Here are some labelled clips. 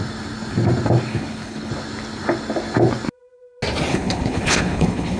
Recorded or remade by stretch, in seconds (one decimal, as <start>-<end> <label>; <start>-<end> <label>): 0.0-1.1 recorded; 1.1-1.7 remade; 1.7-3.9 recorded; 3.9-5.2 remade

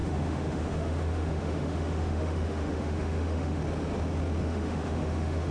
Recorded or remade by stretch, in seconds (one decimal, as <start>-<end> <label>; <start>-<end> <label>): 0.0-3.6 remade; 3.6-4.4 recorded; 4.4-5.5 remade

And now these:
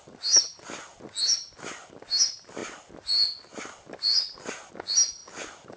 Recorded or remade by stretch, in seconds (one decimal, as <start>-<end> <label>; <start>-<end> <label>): 0.0-5.8 recorded